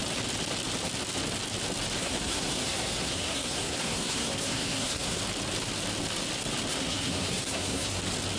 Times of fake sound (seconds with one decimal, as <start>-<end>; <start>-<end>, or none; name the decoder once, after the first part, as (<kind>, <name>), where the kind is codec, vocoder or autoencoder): 2.0-5.2 (codec, SNAC); 6.7-8.0